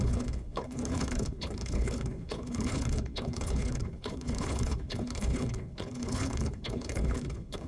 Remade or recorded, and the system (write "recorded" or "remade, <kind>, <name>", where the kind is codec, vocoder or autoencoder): remade, codec, HILCodec